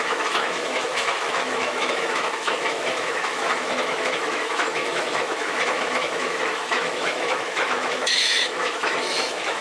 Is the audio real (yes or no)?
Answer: no